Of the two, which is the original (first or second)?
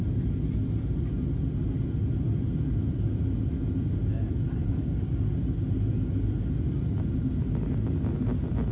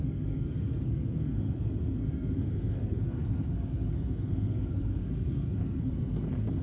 first